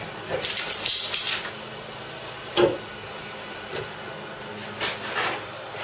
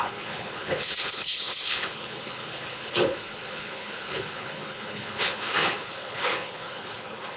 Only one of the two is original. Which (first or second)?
first